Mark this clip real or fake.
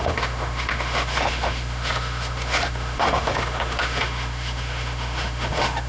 fake